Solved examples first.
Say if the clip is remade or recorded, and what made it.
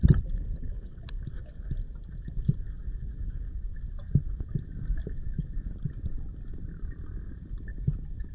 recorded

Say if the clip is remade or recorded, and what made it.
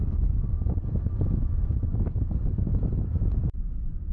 recorded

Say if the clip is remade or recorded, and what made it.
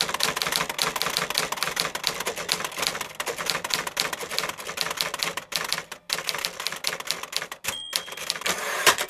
recorded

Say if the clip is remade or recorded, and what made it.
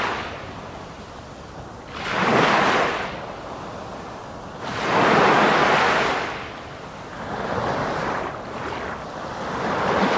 recorded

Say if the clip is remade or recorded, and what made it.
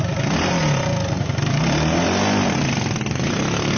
recorded